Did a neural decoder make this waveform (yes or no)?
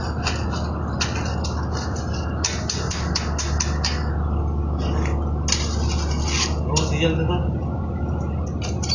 no